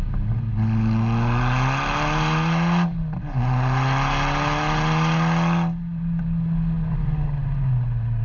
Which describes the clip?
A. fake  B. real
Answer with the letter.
B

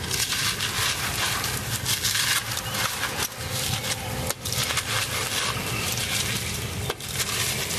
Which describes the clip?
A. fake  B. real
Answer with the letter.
B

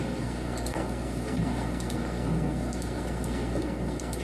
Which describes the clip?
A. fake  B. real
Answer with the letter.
A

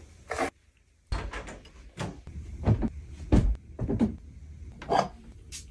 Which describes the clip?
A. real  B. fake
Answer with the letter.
A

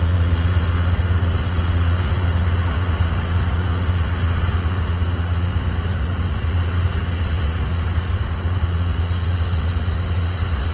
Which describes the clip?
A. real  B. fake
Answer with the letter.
B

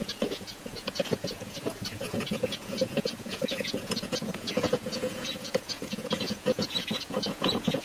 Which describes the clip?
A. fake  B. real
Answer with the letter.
A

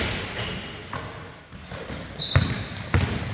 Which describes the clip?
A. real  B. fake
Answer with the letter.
A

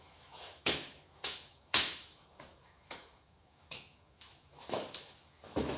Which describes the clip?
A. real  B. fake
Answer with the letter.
B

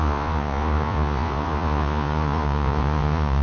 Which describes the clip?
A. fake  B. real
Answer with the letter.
A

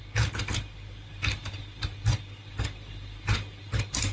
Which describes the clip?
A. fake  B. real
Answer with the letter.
B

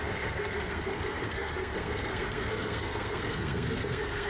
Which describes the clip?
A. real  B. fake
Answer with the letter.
B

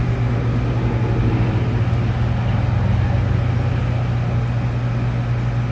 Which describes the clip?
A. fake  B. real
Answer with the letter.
B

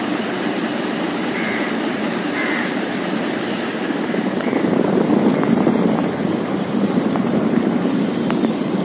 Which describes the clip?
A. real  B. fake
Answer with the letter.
B